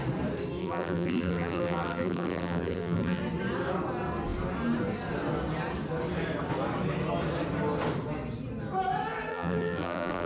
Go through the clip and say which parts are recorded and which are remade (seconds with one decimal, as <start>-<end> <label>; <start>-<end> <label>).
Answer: 0.0-0.6 recorded; 0.6-3.2 remade; 3.2-9.3 recorded; 9.3-10.3 remade